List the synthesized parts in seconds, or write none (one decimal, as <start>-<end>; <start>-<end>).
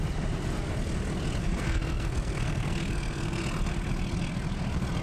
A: 1.4-3.4